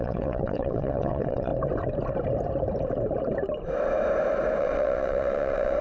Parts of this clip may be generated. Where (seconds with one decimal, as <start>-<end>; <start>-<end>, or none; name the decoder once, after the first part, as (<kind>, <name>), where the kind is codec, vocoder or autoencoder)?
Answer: 0.0-1.5 (vocoder, WaveNeXt); 4.6-5.8